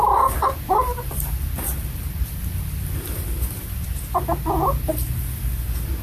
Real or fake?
real